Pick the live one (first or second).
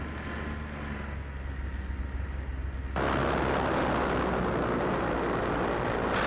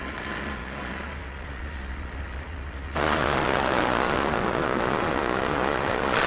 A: first